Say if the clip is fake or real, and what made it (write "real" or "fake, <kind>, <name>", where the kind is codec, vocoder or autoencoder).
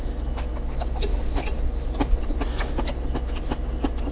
real